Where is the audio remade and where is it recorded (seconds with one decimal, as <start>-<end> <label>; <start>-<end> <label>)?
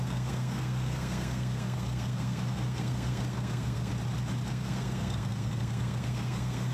0.0-3.9 remade; 3.9-4.5 recorded; 4.5-6.7 remade